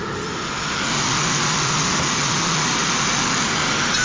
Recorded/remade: recorded